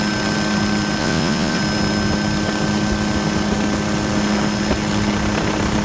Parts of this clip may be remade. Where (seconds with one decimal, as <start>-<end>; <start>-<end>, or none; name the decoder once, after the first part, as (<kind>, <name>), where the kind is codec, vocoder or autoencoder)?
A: 1.0-1.6 (vocoder, Vocos)

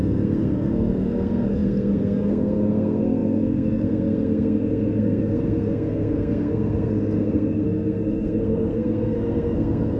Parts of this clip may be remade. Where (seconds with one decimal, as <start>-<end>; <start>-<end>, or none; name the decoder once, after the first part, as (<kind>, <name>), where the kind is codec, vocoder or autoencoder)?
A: 0.0-10.0 (codec, SNAC)

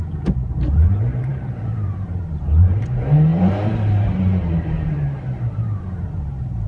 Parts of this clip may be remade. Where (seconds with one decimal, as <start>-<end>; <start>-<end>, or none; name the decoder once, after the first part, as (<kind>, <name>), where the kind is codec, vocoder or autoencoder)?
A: 0.0-6.7 (vocoder, BigVGAN v2)

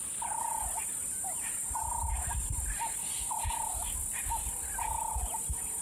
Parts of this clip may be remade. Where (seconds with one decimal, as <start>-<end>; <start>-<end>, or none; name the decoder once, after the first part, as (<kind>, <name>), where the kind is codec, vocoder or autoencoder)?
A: none

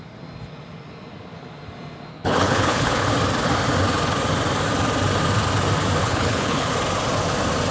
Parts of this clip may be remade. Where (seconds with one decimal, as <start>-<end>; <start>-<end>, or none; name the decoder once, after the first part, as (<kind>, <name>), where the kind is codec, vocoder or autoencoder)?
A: 2.1-3.1 (codec, HILCodec); 6.0-6.7

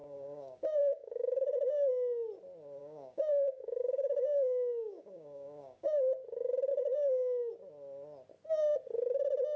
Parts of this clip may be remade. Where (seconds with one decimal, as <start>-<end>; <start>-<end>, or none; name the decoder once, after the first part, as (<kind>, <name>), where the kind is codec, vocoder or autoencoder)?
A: 0.0-1.9 (codec, DAC); 2.8-6.1; 6.7-7.5

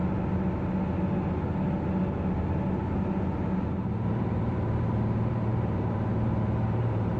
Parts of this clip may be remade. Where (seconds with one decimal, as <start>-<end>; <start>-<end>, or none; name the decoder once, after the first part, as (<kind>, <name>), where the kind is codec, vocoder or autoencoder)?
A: 3.6-7.2 (vocoder, BigVGAN v2)